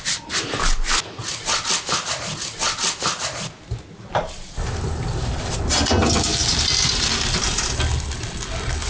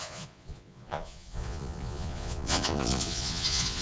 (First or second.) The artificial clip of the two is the second